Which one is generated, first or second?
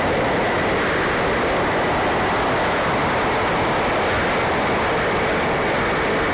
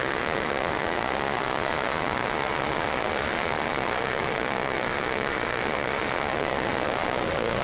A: second